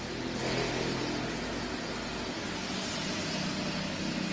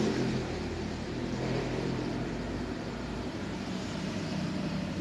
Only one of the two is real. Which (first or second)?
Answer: first